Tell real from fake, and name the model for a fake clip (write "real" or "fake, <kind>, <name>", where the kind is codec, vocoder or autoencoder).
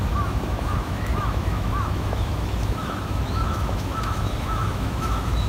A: fake, autoencoder, DAC-VAE